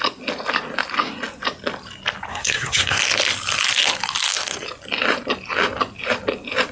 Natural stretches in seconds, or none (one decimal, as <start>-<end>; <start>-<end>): 0.0-2.3; 3.0-6.7